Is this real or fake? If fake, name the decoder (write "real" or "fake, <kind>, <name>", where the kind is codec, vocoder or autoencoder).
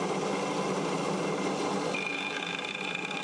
real